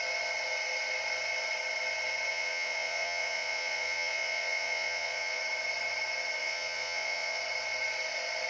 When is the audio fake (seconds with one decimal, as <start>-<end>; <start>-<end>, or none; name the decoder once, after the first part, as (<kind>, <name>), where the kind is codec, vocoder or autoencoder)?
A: 2.3-5.4 (vocoder, Vocos); 6.4-7.4

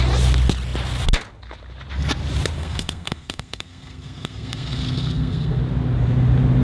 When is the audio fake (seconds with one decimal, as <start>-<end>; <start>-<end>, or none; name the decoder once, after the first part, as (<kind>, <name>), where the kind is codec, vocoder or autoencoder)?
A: 2.6-5.6 (codec, SNAC)

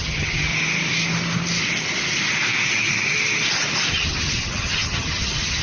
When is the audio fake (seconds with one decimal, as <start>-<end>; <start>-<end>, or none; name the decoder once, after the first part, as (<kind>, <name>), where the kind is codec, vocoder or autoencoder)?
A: 0.0-0.5 (vocoder, HiFi-GAN); 3.9-5.6

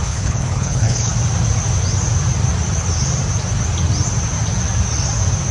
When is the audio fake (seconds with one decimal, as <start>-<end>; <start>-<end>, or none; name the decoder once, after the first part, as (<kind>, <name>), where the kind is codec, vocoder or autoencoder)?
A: 0.0-1.1 (codec, HILCodec)

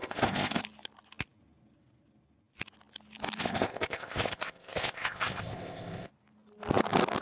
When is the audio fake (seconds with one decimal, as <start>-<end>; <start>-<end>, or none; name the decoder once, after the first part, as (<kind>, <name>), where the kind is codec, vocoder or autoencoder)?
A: 0.0-0.6 (codec, ZipCodec); 3.4-6.1

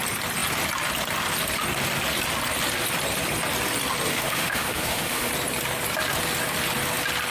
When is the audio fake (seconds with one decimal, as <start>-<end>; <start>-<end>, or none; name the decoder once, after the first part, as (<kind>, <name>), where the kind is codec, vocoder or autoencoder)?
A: 4.1-5.3 (autoencoder, DAC-VAE)

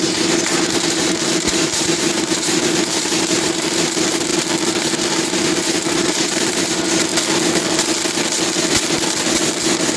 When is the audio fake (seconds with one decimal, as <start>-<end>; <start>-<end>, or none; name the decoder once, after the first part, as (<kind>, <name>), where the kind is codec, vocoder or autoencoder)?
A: 0.0-4.3 (vocoder, BigVGAN v2); 4.8-7.1; 9.6-10.0